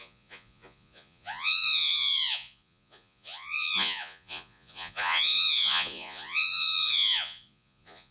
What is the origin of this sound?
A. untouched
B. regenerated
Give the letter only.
B